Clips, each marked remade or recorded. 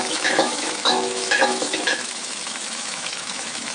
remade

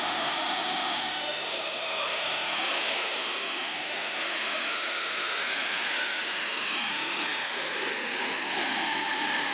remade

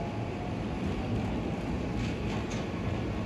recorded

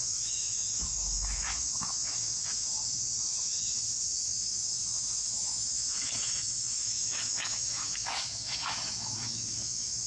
remade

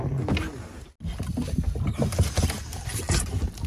recorded